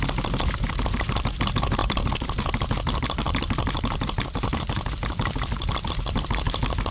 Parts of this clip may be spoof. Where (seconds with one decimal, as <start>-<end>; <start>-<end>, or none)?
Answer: 1.8-5.9

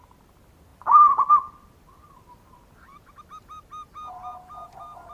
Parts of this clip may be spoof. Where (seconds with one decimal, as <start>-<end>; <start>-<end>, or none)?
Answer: 0.7-1.3

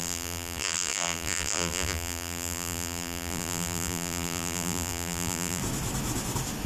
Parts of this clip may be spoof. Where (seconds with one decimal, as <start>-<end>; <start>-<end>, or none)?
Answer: 0.0-5.6

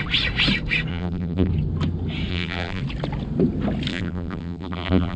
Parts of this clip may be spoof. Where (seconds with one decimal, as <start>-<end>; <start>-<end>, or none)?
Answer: 0.9-1.5; 2.3-2.8; 3.9-5.2

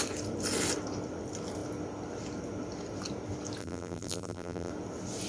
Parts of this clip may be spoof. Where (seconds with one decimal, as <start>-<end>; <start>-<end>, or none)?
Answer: 3.6-4.7

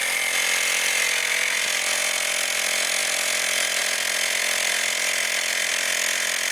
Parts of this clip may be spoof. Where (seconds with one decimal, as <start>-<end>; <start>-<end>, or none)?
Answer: 0.0-2.0; 3.0-3.8; 4.4-5.7

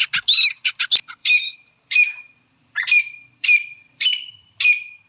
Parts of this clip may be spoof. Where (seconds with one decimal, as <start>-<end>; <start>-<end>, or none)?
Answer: 1.2-4.3

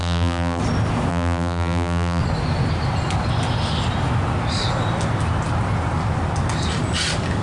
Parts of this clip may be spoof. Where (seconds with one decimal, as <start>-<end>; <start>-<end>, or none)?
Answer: 0.0-0.6; 1.1-2.2